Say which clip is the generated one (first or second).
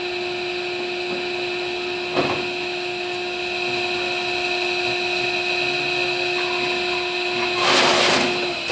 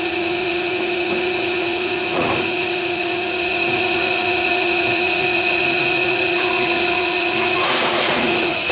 second